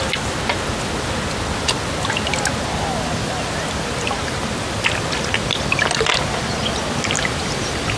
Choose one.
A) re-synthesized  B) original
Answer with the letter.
B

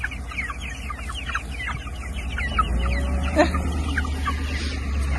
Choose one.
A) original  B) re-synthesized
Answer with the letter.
A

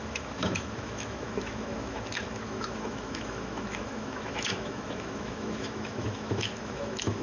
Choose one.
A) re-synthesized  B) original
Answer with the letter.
A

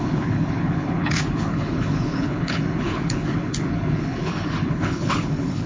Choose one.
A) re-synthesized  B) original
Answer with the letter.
A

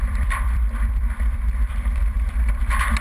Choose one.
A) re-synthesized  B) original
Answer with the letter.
A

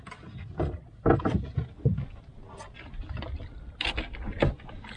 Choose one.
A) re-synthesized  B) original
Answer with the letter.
B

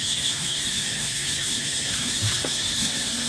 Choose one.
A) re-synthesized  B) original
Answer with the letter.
A